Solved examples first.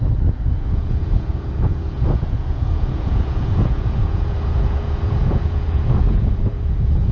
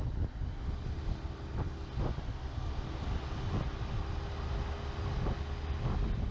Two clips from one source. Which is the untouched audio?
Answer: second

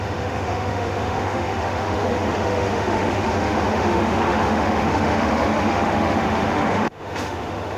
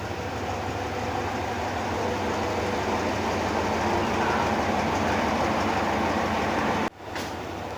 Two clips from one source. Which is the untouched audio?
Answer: second